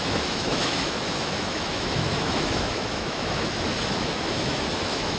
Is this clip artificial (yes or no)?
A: yes